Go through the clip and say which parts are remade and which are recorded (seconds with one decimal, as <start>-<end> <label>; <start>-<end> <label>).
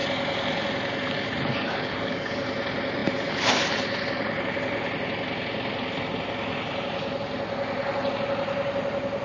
0.0-1.5 recorded; 1.5-2.5 remade; 2.5-9.2 recorded